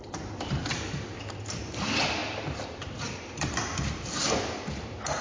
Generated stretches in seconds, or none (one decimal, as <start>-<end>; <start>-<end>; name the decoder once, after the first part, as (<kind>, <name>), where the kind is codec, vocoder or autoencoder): 0.0-2.2 (vocoder, BigVGAN v2); 2.7-5.2